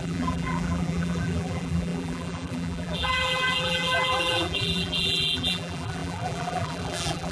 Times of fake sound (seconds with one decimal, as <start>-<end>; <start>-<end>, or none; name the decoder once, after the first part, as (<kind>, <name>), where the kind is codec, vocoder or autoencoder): 0.0-7.3 (vocoder, BigVGAN v2)